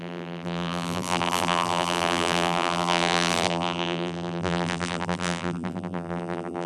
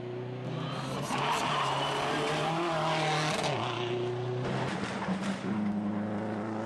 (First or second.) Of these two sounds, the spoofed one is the first